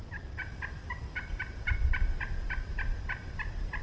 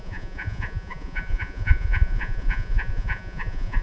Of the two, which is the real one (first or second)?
first